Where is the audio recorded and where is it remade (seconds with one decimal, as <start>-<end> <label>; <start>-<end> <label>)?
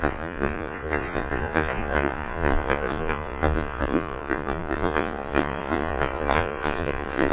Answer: 0.0-7.3 remade